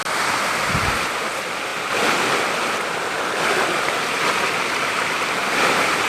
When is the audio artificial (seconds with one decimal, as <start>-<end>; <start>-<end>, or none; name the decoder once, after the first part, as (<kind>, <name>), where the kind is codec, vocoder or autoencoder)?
none